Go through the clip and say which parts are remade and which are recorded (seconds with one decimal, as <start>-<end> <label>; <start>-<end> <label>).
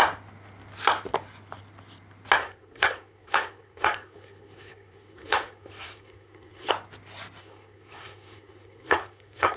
0.0-2.4 recorded; 2.4-6.7 remade; 6.7-7.4 recorded; 7.4-9.6 remade